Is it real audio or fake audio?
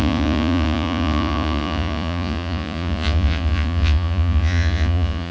fake